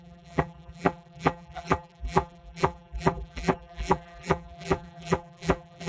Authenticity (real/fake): fake